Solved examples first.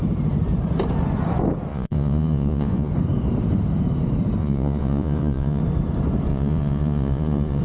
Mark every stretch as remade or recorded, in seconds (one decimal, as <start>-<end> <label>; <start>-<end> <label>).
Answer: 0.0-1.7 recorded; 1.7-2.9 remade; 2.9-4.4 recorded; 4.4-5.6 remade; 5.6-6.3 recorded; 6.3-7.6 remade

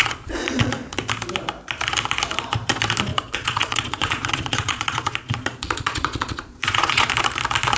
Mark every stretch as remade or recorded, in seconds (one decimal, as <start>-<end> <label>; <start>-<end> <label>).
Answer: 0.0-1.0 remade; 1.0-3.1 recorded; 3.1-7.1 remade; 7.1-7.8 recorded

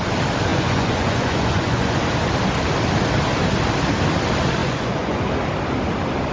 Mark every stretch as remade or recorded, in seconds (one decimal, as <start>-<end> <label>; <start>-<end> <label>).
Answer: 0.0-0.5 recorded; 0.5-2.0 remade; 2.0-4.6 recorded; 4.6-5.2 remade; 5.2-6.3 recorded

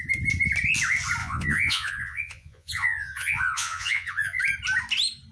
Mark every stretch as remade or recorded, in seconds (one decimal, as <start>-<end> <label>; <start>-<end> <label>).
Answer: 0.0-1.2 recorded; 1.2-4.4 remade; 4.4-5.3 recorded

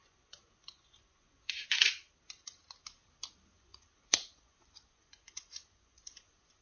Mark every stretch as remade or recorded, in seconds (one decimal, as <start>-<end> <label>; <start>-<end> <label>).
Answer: 0.0-2.1 remade; 2.1-3.5 recorded; 3.5-6.6 remade